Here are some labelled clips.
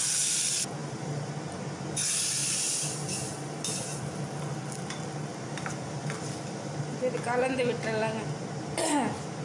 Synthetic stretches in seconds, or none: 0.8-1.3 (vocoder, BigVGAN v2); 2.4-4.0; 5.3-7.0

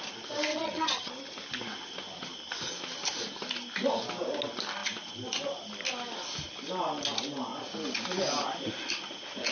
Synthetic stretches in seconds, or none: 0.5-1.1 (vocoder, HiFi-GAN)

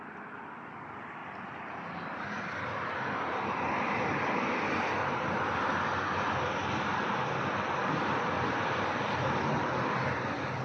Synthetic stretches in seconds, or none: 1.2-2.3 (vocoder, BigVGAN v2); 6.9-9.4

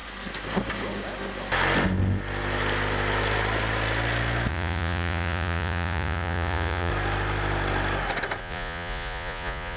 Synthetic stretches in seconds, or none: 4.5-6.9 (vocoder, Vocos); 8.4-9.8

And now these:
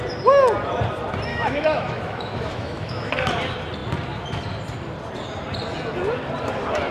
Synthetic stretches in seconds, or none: 1.3-3.1 (autoencoder, DAC-VAE)

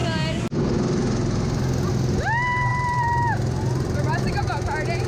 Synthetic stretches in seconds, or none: 2.7-4.4 (vocoder, BigVGAN v2)

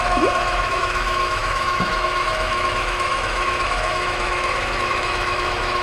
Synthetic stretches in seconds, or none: 0.0-5.8 (autoencoder, DAC-VAE)